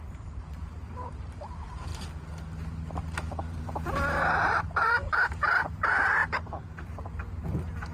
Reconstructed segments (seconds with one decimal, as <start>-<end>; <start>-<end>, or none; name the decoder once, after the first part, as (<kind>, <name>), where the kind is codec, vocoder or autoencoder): 0.0-1.9 (vocoder, BigVGAN v2); 3.4-7.9